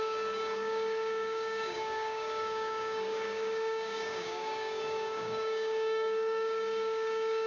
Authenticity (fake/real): fake